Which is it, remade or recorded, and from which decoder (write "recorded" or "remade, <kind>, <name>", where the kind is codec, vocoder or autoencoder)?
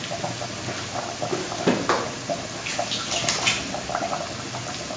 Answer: recorded